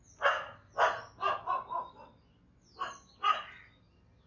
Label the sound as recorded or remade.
recorded